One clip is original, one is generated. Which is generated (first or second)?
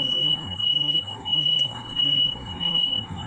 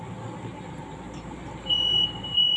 first